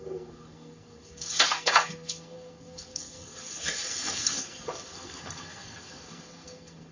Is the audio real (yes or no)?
no